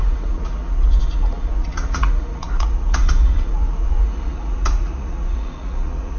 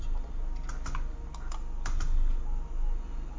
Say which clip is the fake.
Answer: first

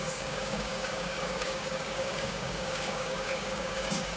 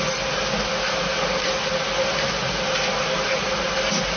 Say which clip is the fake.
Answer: first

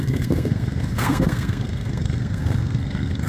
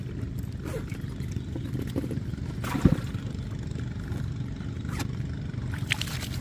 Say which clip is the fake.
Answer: first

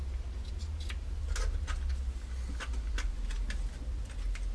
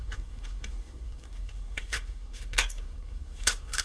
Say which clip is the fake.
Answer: second